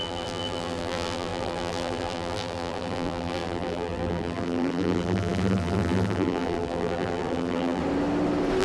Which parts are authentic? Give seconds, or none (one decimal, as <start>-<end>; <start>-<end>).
7.8-8.6

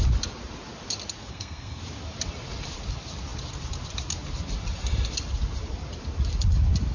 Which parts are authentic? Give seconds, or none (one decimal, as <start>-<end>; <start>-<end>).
0.0-1.3; 1.8-6.9

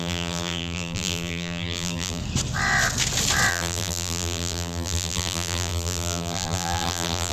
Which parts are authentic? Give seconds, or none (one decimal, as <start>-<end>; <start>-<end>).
2.2-3.5

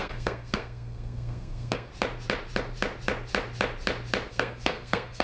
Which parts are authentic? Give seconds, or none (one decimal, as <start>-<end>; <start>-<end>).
1.9-4.3

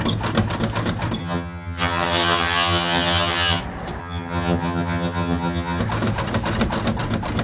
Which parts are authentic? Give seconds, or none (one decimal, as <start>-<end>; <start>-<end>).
0.0-1.2; 3.6-4.0; 5.8-7.4

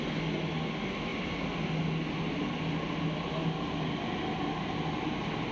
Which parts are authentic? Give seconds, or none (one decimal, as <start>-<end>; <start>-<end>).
0.0-5.5

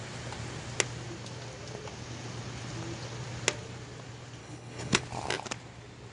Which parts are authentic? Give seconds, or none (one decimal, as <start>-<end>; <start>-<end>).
0.0-4.4; 5.0-6.1

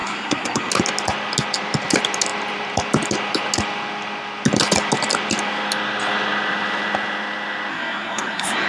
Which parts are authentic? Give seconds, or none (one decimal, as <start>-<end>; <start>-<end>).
0.7-7.7